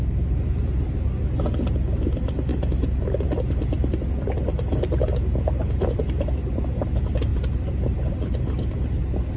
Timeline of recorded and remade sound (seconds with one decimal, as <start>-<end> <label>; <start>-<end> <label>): 0.0-9.4 recorded